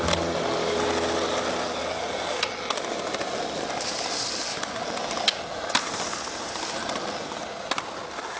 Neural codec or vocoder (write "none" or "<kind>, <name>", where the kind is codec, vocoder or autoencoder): none